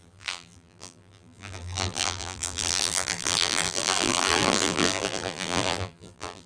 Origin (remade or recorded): remade